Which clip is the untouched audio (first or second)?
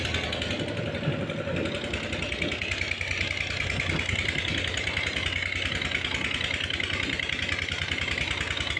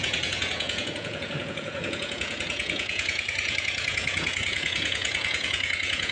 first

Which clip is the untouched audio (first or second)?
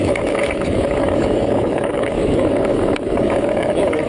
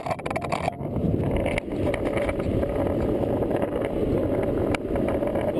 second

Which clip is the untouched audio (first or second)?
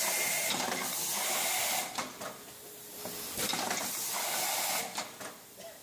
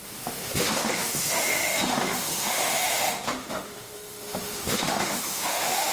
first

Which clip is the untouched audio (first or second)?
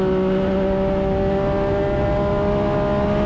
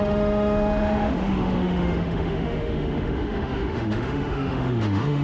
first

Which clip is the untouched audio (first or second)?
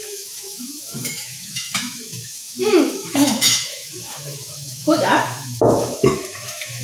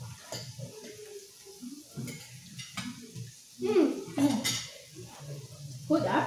second